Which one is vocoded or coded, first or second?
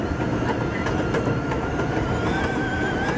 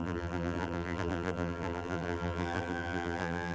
second